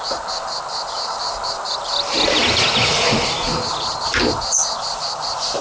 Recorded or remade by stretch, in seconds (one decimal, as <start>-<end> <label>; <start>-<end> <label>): 0.0-2.4 remade; 2.4-2.9 recorded; 2.9-5.6 remade